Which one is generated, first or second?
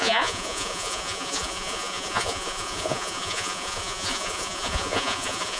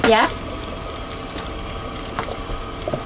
first